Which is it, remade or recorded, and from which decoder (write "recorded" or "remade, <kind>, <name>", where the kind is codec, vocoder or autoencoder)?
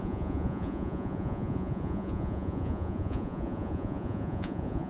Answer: remade, vocoder, Vocos